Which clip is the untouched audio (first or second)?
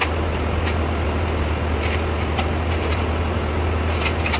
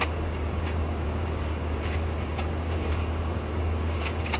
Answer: first